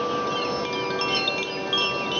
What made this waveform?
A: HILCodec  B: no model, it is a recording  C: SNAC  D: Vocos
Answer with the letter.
B